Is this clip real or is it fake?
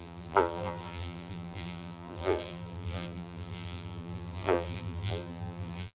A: fake